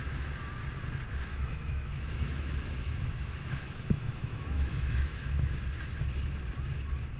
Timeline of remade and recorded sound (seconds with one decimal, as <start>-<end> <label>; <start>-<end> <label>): 0.0-1.3 recorded; 1.3-5.6 remade; 5.6-7.2 recorded

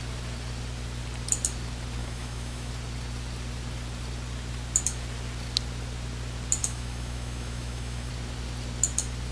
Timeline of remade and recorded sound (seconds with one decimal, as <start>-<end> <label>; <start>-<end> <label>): 0.0-2.0 recorded; 2.0-2.7 remade; 2.7-6.6 recorded; 6.6-8.1 remade; 8.1-9.3 recorded